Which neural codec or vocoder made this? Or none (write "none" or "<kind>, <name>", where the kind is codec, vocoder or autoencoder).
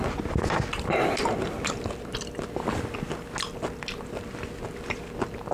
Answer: none